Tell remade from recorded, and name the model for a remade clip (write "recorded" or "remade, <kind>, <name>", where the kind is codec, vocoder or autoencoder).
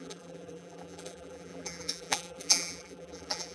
remade, vocoder, BigVGAN v2